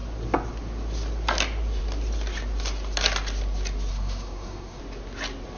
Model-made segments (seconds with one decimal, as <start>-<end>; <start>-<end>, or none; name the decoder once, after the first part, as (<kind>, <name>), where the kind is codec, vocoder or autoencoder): 3.9-4.8 (codec, SNAC)

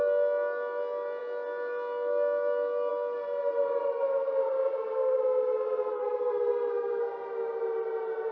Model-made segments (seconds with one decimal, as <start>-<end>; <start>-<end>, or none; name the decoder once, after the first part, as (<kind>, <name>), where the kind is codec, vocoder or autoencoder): 3.9-7.0 (codec, SNAC)

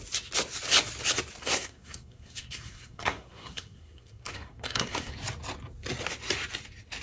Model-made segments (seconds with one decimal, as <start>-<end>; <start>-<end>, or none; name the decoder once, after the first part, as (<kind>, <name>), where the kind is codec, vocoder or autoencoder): 1.4-5.1 (codec, SNAC)

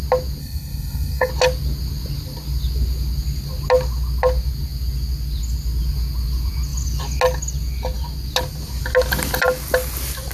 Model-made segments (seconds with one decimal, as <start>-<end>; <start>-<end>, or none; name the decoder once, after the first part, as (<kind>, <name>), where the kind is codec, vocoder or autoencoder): 0.4-1.3 (codec, SNAC)